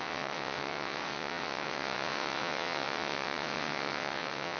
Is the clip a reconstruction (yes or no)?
yes